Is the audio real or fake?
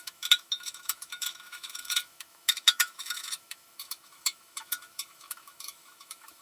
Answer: fake